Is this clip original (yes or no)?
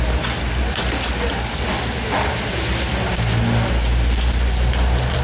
yes